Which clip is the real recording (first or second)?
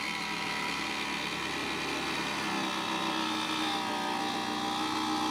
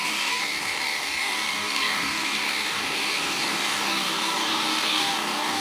first